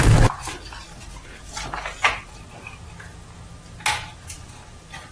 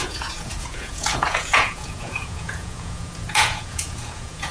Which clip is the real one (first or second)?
first